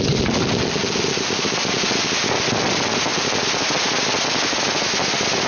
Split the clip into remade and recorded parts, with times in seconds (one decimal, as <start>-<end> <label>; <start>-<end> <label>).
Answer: 0.0-5.5 recorded